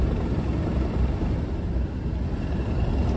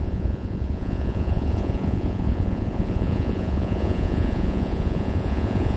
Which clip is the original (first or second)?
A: first